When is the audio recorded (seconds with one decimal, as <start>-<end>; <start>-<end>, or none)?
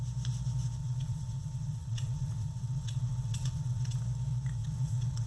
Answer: 0.0-0.8; 4.0-4.6